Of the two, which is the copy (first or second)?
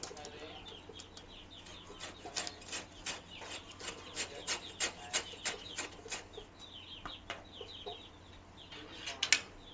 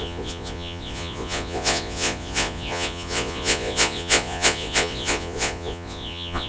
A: second